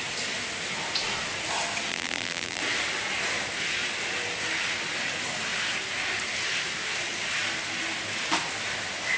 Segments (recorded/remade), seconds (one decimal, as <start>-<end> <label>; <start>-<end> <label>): 0.0-1.9 recorded; 1.9-2.6 remade; 2.6-9.2 recorded